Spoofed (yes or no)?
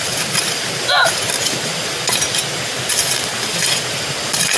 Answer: no